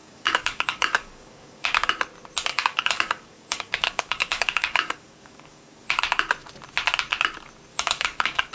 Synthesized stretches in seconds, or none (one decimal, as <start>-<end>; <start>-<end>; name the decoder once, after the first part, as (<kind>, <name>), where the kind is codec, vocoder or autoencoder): 0.0-1.9 (codec, DAC); 2.5-6.0; 7.7-8.5